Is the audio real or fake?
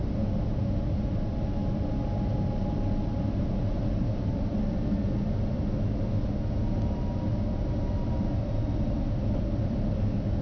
real